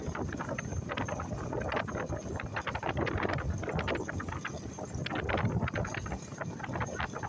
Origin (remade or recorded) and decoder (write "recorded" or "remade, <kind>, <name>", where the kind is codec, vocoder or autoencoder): recorded